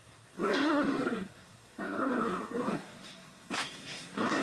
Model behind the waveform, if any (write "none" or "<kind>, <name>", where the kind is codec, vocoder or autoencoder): codec, SNAC